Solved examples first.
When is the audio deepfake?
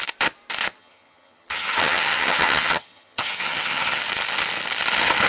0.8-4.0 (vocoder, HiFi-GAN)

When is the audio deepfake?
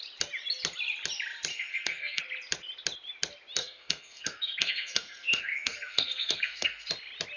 1.5-2.2 (codec, SNAC); 3.6-6.9